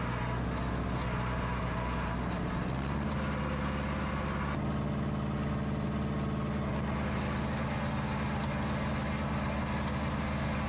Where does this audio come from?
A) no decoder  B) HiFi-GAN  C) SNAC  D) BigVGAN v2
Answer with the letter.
A